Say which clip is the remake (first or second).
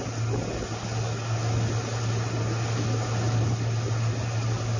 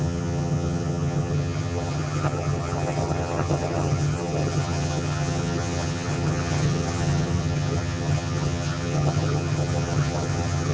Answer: second